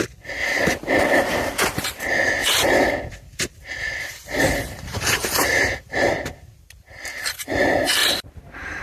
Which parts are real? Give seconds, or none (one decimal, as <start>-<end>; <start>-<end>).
0.0-2.4; 6.6-8.0